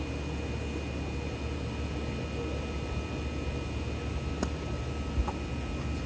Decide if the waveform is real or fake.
real